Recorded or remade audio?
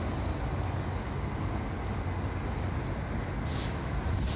recorded